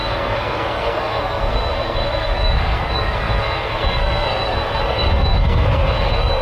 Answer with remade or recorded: remade